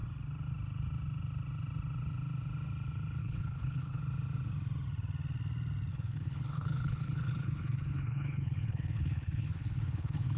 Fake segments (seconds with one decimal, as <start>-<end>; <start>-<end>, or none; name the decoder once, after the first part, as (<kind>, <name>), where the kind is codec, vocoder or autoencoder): 3.2-4.0 (codec, HILCodec); 5.9-10.4